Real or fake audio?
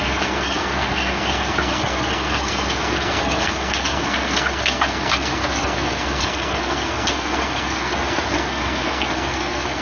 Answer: fake